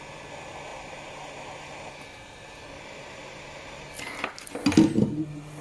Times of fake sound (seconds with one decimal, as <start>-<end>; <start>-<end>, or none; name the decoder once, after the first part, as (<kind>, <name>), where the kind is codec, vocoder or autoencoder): none

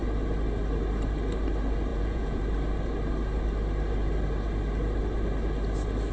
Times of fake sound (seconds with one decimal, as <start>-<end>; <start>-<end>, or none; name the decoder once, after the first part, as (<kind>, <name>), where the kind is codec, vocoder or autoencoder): 1.9-2.4 (vocoder, Vocos)